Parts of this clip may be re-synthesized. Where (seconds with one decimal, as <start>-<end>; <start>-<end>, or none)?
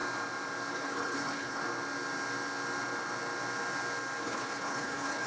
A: 0.7-1.6; 4.2-5.3